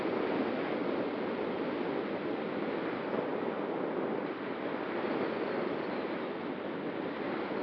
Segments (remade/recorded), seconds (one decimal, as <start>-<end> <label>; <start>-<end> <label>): 0.0-7.6 recorded